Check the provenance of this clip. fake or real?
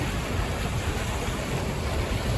real